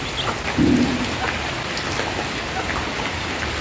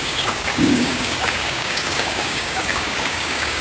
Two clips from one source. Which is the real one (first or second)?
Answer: first